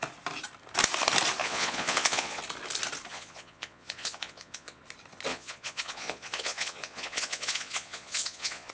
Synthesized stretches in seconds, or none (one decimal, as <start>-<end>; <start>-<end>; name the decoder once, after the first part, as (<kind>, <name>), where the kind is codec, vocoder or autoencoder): 1.4-2.4 (vocoder, Vocos); 3.1-4.8; 5.3-8.7